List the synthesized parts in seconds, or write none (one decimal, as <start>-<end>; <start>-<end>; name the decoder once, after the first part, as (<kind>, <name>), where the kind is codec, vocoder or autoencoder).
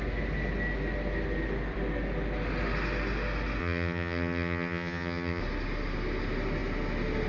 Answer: 3.6-5.4 (vocoder, HiFi-GAN)